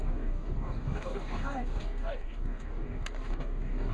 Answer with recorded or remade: remade